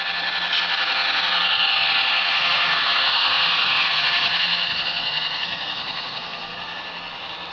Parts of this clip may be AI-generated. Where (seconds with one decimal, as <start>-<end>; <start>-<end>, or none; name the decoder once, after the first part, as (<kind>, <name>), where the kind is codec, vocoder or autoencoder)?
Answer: 2.3-6.8 (codec, SNAC)